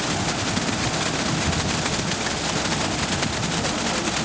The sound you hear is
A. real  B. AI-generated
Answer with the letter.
A